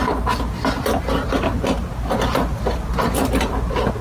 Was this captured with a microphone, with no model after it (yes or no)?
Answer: yes